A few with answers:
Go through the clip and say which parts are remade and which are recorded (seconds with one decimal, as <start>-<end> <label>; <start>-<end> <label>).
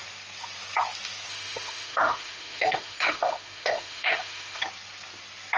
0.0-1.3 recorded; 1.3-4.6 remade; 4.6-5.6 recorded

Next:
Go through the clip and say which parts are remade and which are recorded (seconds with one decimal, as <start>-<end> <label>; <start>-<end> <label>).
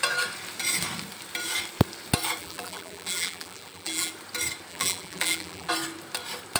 0.0-2.4 recorded; 2.4-4.1 remade; 4.1-4.7 recorded; 4.7-5.7 remade; 5.7-6.6 recorded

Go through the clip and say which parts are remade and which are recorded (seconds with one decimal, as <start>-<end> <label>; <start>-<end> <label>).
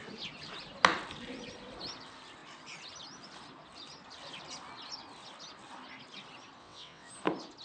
0.0-6.6 recorded; 6.6-7.1 remade; 7.1-7.6 recorded